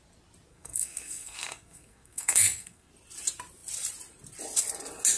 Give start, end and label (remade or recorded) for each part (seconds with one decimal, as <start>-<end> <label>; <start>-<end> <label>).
0.0-0.5 recorded; 0.5-2.9 remade; 2.9-5.2 recorded